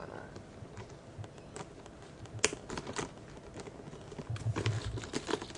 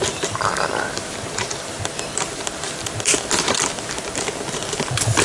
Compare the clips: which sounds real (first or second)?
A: first